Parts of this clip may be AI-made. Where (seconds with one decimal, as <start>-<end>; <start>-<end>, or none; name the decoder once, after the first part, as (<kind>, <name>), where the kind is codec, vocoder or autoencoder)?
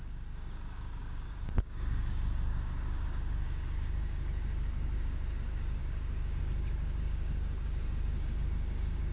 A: 0.0-9.1 (codec, DAC)